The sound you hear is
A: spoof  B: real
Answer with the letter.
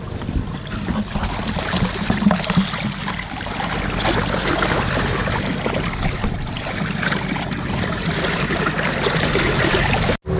B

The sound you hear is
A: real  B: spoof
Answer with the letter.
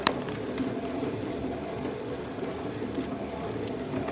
A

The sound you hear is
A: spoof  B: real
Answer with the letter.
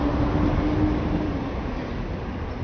B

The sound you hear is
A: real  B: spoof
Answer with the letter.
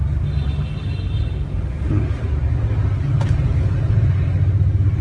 A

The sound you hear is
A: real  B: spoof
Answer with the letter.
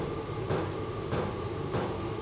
A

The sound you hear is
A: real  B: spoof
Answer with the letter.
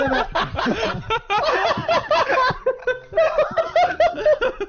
A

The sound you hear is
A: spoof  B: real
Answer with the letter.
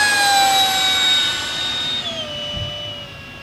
B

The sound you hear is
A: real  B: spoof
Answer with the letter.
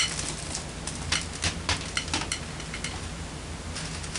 A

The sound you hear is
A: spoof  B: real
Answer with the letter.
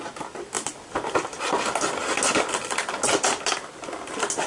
B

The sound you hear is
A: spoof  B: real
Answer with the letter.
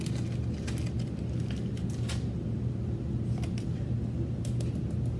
B